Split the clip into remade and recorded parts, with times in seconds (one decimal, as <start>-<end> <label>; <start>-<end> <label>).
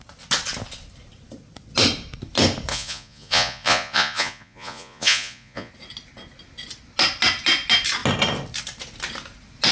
0.0-2.7 recorded; 2.7-5.7 remade; 5.7-9.7 recorded